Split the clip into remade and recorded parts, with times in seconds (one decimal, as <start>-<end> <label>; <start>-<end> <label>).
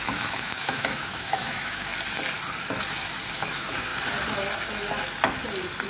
0.0-1.9 remade; 1.9-3.3 recorded; 3.3-3.9 remade; 3.9-5.9 recorded